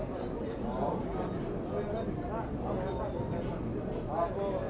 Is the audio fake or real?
real